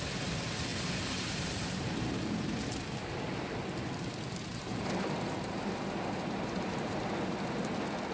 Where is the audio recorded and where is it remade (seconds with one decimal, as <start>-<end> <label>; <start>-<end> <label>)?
0.0-0.7 recorded; 0.7-2.2 remade; 2.2-4.5 recorded; 4.5-7.0 remade; 7.0-8.1 recorded